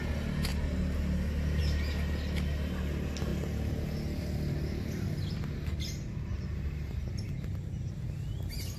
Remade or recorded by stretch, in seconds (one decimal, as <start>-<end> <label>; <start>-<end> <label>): 0.0-8.8 recorded